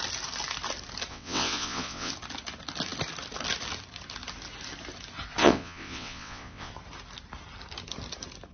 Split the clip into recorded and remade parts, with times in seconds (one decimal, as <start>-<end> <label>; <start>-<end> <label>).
0.0-1.1 recorded; 1.1-2.1 remade; 2.1-5.4 recorded; 5.4-6.7 remade; 6.7-8.5 recorded